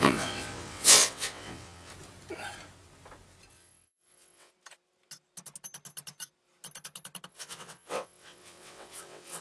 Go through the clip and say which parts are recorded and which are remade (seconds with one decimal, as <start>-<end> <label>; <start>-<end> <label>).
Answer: 0.0-1.9 remade; 1.9-3.5 recorded; 3.5-4.5 remade; 4.5-7.3 recorded; 7.3-9.4 remade